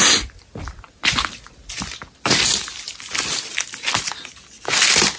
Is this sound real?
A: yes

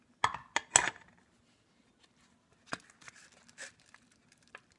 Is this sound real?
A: yes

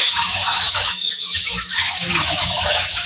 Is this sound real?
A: no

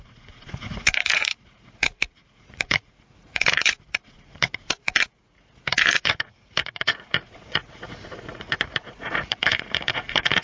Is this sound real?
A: no